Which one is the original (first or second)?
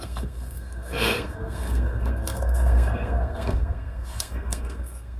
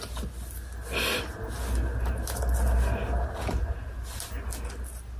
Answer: second